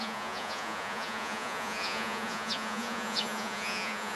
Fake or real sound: fake